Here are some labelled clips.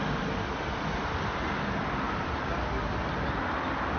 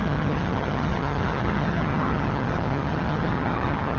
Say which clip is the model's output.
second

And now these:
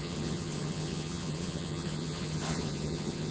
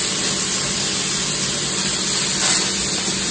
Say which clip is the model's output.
first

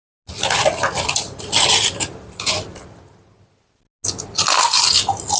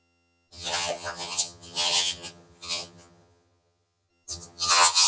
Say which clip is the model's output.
second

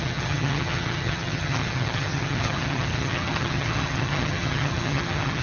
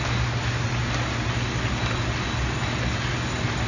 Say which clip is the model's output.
first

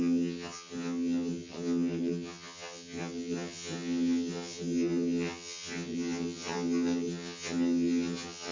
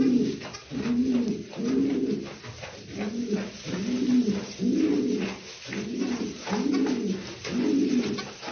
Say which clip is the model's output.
first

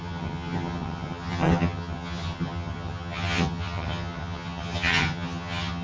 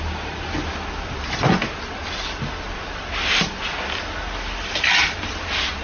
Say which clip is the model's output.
first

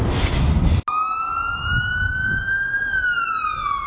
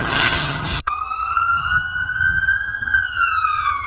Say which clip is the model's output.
second